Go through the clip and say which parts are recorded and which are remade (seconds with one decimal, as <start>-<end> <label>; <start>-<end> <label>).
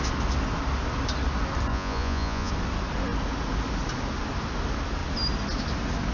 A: 0.0-1.7 recorded; 1.7-2.5 remade; 2.5-6.1 recorded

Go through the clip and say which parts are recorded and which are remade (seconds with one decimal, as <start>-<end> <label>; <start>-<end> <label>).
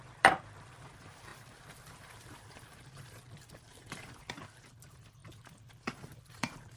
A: 0.0-5.2 remade; 5.2-6.3 recorded; 6.3-6.8 remade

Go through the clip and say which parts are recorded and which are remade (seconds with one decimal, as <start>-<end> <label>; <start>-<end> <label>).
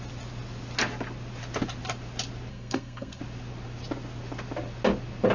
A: 0.0-2.5 recorded; 2.5-3.2 remade; 3.2-5.3 recorded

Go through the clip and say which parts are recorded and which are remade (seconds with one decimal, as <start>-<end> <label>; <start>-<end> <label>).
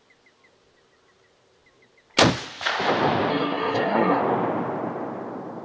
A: 0.0-3.3 recorded; 3.3-4.2 remade; 4.2-5.6 recorded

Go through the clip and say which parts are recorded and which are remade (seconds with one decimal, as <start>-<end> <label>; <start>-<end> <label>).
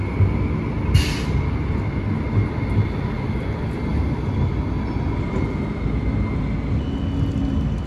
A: 0.0-7.9 recorded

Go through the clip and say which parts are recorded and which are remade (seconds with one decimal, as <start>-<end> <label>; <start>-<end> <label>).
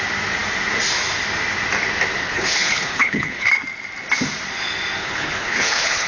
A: 0.0-2.2 recorded; 2.2-3.5 remade; 3.5-5.0 recorded; 5.0-6.1 remade